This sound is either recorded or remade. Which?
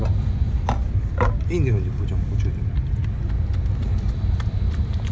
recorded